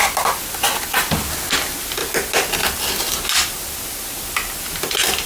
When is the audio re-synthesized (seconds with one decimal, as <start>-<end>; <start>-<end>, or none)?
none